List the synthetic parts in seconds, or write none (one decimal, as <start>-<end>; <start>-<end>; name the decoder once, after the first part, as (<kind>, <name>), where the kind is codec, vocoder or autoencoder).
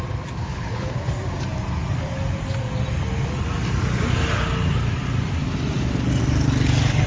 0.4-1.1 (codec, HILCodec)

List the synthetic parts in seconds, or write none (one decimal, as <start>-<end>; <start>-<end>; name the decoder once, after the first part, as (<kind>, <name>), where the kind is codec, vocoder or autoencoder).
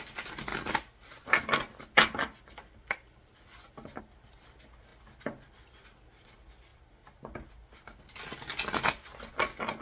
none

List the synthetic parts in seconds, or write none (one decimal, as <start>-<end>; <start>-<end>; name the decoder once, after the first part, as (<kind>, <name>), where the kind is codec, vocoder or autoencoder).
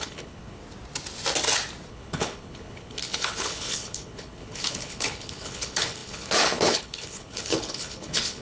0.0-0.6 (codec, HILCodec); 1.9-8.4